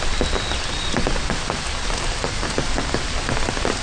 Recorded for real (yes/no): yes